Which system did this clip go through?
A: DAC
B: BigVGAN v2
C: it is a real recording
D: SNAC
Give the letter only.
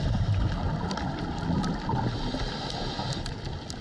C